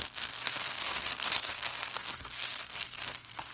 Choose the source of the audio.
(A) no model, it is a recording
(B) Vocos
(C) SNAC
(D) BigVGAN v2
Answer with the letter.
C